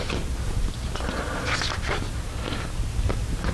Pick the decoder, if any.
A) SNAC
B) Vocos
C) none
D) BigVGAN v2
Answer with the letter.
C